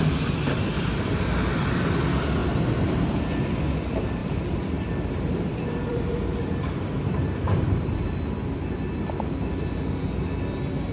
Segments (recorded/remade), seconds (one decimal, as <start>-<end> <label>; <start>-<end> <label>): 0.0-4.2 recorded; 4.2-8.1 remade; 8.1-10.9 recorded